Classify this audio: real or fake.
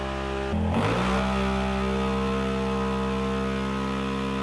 real